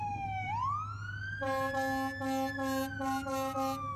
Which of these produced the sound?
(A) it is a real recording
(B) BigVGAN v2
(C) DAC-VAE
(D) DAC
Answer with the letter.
A